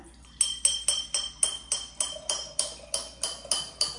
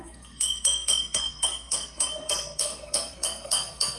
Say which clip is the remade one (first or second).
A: second